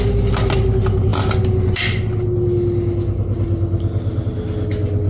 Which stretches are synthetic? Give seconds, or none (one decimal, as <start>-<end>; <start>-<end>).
none